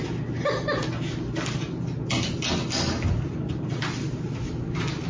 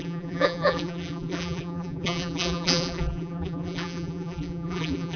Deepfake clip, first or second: second